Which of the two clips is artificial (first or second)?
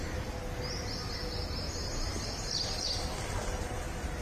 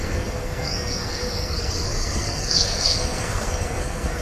second